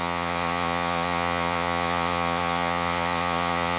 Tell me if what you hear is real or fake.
fake